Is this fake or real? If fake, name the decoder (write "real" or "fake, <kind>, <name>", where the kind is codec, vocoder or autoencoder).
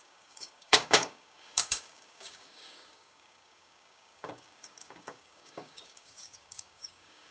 fake, codec, DAC